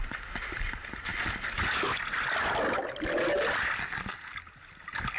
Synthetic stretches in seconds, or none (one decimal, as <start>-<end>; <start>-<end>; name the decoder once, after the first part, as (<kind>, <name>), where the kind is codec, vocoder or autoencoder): none